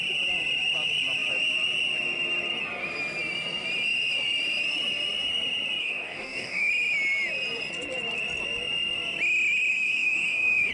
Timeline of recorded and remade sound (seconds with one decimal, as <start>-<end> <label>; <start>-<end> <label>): 0.0-5.8 recorded; 5.8-6.7 remade; 6.7-9.7 recorded; 9.7-10.7 remade